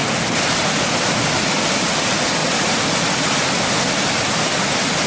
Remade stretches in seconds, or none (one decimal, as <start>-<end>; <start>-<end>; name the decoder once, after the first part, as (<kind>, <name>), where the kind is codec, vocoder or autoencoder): none